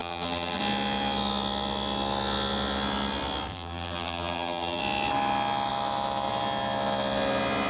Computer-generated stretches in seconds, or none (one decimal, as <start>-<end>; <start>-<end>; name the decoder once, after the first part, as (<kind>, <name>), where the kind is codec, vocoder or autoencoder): 0.0-0.6 (vocoder, BigVGAN v2); 3.5-4.8